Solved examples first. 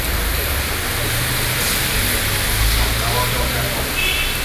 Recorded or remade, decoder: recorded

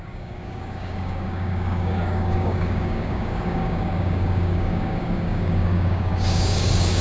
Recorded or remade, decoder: remade, codec, DAC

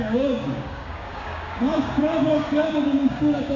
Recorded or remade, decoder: remade, codec, DAC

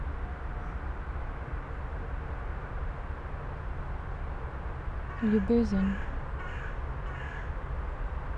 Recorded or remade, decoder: recorded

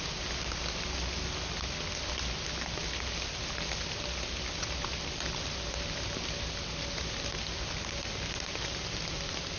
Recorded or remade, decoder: recorded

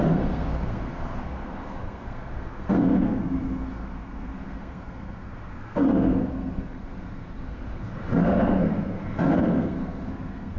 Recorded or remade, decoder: remade, codec, SNAC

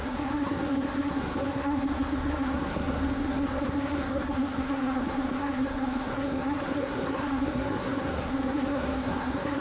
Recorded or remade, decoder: remade, codec, SNAC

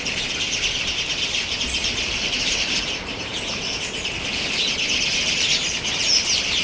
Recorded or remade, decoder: remade, vocoder, BigVGAN v2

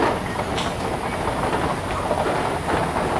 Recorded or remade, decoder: recorded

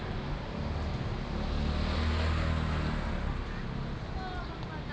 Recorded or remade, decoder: recorded